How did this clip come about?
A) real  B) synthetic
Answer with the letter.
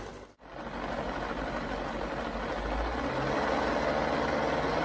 A